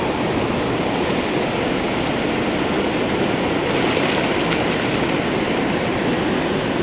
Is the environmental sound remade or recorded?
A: recorded